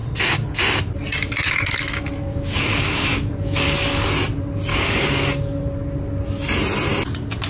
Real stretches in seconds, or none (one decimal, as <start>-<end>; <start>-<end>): 0.0-2.3; 4.1-4.7; 5.6-7.5